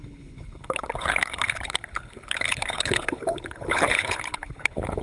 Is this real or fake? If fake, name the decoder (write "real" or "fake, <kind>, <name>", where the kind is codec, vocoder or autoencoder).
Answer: fake, codec, HILCodec